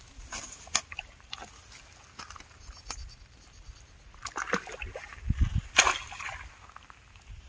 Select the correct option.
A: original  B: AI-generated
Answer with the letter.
A